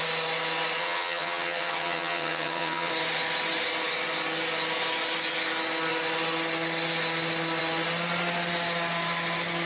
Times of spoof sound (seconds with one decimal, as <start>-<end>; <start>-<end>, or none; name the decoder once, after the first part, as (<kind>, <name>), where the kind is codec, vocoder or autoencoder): 0.8-2.9 (vocoder, HiFi-GAN)

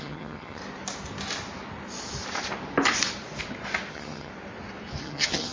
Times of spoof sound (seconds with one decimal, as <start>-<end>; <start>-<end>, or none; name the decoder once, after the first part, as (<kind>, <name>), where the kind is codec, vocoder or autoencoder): 0.0-0.6 (vocoder, HiFi-GAN); 3.9-4.3; 5.0-5.5

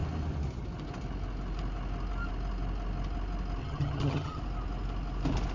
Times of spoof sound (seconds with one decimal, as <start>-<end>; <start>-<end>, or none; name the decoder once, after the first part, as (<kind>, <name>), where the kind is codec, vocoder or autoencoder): 3.6-4.4 (vocoder, HiFi-GAN)